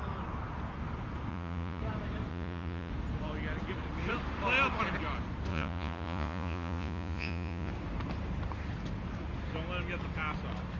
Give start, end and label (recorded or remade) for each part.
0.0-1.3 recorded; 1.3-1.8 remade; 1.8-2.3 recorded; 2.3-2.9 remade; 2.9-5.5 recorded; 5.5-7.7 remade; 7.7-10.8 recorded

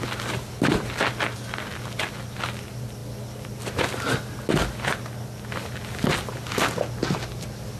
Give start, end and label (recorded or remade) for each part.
0.0-7.8 recorded

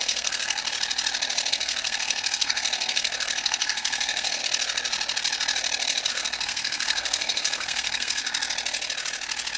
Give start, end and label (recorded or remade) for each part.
0.0-0.6 remade; 0.6-1.5 recorded; 1.5-4.4 remade; 4.4-6.1 recorded; 6.1-8.2 remade; 8.2-9.6 recorded

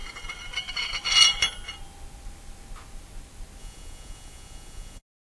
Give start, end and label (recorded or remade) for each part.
0.0-3.6 recorded; 3.6-5.0 remade; 5.0-5.4 recorded

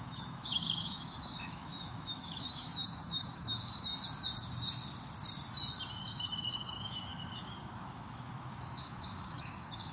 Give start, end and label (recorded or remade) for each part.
0.0-3.9 remade; 3.9-6.0 recorded; 6.0-9.9 remade

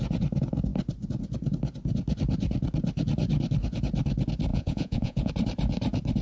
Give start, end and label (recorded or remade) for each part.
0.0-4.5 recorded; 4.5-5.3 remade; 5.3-6.2 recorded

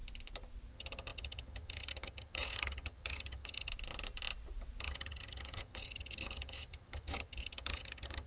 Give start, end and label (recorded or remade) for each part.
0.0-0.7 recorded; 0.7-3.7 remade; 3.7-4.8 recorded; 4.8-8.3 remade

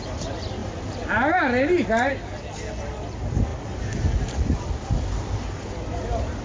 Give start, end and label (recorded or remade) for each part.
0.0-6.4 recorded